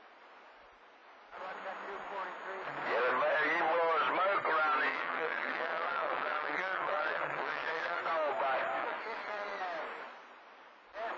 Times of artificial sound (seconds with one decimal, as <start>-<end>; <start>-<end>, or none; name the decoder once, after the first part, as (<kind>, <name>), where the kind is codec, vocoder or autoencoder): 4.9-8.0 (vocoder, WaveNeXt); 8.8-9.6